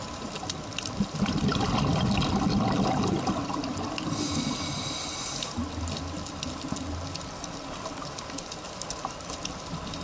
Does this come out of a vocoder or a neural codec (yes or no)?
no